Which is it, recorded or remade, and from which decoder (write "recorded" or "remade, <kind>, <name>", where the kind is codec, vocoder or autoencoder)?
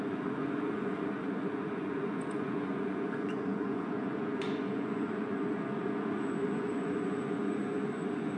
remade, vocoder, Vocos